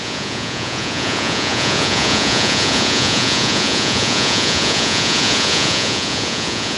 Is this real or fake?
fake